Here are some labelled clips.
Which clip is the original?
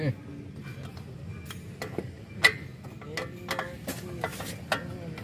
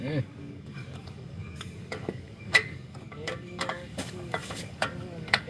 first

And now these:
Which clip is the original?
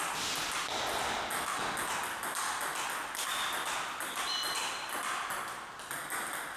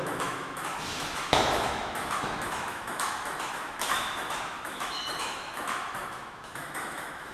first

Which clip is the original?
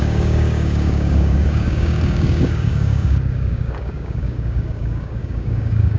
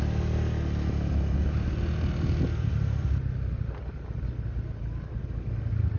second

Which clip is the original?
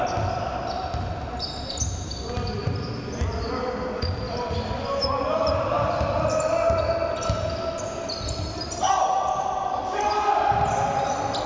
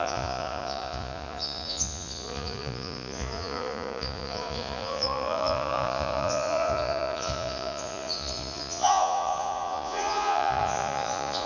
first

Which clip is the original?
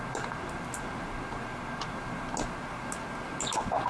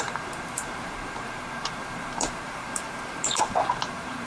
first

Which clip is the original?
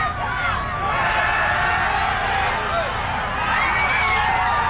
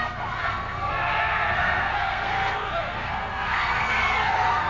first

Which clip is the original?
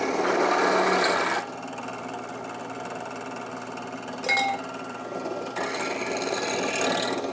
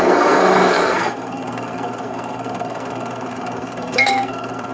first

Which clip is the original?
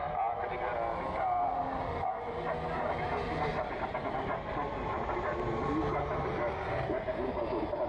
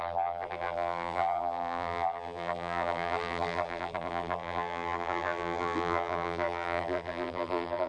first